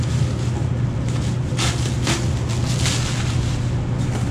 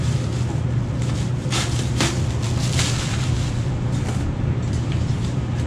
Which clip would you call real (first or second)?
first